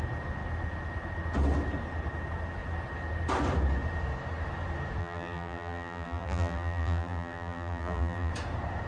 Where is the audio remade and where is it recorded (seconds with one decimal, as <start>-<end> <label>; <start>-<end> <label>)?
0.0-5.0 recorded; 5.0-8.3 remade; 8.3-8.9 recorded